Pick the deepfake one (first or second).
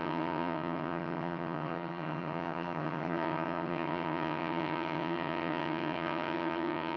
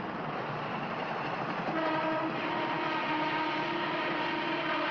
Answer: first